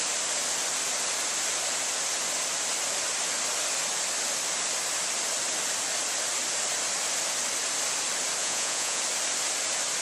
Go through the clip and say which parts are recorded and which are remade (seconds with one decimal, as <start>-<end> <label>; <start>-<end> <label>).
0.0-8.4 recorded; 8.4-9.0 remade; 9.0-10.0 recorded